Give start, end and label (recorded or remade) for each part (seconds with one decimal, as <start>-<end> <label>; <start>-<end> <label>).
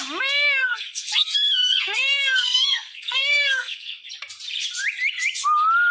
0.0-0.6 recorded; 0.6-4.1 remade; 4.1-5.9 recorded